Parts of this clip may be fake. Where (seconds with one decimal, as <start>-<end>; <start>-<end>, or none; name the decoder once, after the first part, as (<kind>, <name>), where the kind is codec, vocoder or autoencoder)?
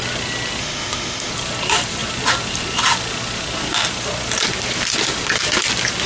0.6-1.3 (autoencoder, DAC-VAE)